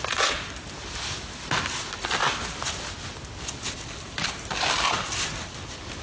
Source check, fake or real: real